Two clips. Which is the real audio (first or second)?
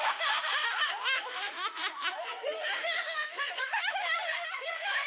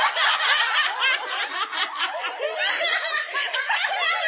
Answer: second